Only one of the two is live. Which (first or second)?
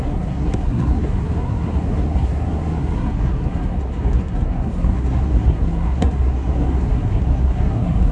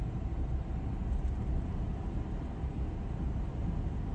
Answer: second